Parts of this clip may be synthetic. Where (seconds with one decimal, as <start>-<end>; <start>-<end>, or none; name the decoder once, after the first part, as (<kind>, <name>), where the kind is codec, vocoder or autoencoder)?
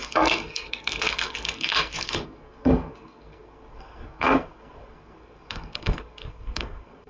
0.0-7.1 (codec, SNAC)